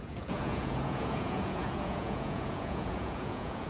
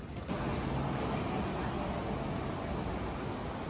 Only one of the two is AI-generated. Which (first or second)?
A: first